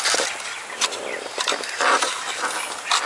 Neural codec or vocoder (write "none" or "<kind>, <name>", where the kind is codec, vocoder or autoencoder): none